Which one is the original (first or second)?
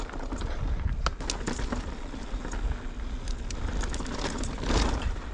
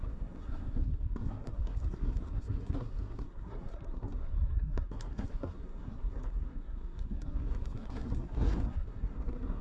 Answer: first